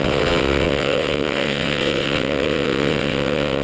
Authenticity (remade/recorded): remade